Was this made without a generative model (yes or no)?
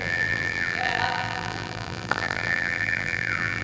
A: no